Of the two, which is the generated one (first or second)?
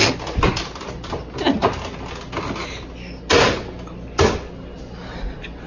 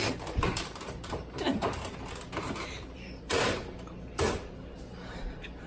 second